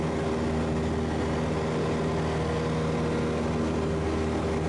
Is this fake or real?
real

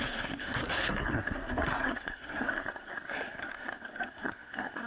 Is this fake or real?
fake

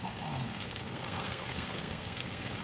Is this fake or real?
fake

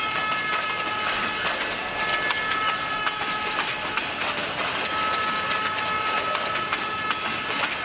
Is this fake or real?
real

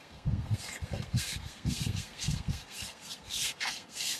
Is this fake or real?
fake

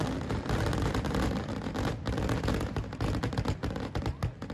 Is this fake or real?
real